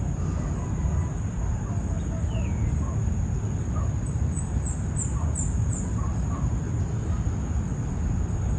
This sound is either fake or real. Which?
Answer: real